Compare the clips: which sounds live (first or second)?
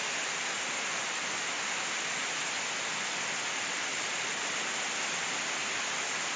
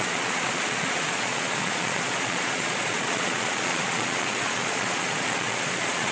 first